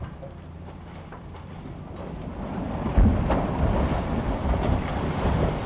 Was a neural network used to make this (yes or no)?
no